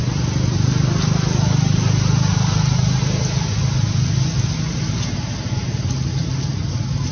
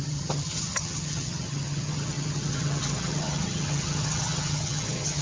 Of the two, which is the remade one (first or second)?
second